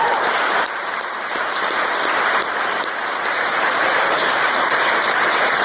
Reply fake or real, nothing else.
fake